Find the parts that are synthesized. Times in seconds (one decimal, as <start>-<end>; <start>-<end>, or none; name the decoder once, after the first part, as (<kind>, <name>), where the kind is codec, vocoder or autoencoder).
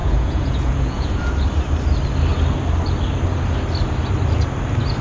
0.0-1.3 (vocoder, Vocos)